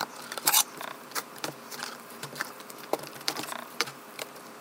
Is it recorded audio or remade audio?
remade